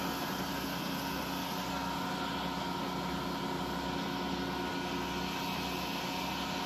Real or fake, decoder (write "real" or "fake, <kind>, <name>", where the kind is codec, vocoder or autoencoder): real